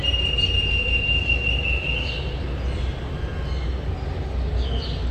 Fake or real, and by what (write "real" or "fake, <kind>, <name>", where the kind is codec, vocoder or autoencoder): real